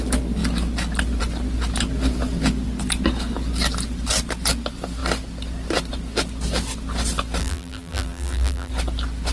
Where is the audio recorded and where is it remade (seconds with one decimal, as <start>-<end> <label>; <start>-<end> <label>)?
0.0-7.4 recorded; 7.4-8.7 remade; 8.7-9.3 recorded